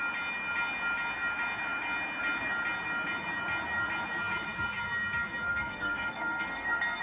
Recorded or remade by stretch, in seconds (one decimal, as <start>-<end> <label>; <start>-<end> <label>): 0.0-5.5 recorded; 5.5-7.0 remade